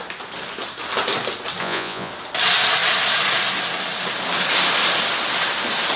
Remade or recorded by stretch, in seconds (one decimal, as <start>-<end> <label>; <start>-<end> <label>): 0.0-1.6 recorded; 1.6-2.1 remade; 2.1-6.0 recorded